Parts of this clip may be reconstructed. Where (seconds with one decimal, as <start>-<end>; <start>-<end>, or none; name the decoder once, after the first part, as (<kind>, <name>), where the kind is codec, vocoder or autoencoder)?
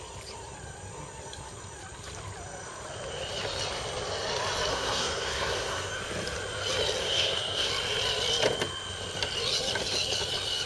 4.7-5.9 (codec, SNAC); 7.0-7.7